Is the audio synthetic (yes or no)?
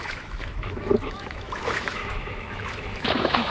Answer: yes